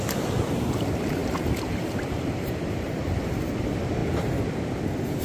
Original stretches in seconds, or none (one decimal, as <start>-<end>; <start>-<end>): 0.0-1.2; 3.1-5.2